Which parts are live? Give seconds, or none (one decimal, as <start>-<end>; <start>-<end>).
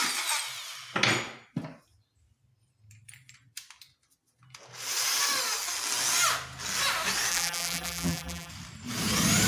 0.0-7.3; 8.5-9.5